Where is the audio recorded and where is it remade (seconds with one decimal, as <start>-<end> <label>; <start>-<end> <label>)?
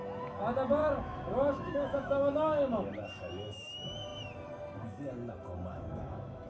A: 0.0-0.8 recorded; 0.8-2.9 remade; 2.9-5.7 recorded; 5.7-6.5 remade